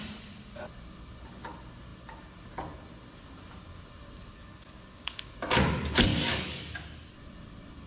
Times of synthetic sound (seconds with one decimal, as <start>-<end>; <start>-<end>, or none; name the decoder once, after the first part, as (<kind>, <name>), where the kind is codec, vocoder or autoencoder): 4.3-5.3 (codec, DAC); 6.1-6.7